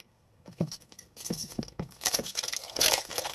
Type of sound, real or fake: fake